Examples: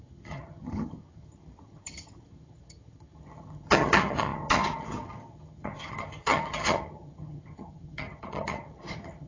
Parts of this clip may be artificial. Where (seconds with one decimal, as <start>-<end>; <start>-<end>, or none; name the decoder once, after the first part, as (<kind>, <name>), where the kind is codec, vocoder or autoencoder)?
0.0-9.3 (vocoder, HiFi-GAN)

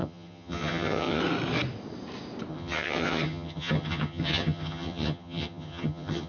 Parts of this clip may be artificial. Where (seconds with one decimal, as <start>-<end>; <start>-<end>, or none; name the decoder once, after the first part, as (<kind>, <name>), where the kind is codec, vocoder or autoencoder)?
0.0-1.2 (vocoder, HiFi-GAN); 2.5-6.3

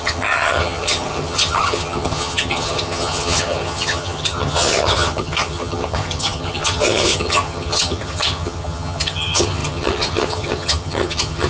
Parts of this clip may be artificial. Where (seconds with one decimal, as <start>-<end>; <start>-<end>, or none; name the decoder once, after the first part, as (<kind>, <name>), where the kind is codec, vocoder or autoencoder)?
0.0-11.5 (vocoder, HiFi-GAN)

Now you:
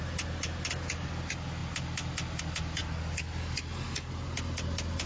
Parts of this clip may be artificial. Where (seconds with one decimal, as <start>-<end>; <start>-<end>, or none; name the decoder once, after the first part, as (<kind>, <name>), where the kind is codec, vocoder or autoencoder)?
none

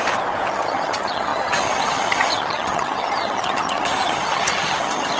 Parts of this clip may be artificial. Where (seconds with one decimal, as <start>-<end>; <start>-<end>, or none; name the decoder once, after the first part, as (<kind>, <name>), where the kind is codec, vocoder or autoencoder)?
0.5-5.2 (vocoder, HiFi-GAN)

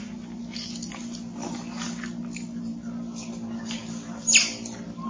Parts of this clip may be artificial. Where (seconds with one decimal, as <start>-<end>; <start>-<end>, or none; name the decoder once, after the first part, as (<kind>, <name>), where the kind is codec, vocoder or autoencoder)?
none